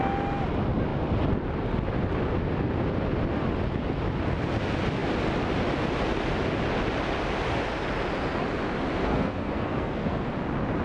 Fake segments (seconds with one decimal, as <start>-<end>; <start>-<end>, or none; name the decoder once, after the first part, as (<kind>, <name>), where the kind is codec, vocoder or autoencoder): 9.0-10.3 (codec, SNAC)